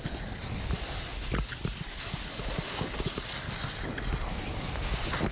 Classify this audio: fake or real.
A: real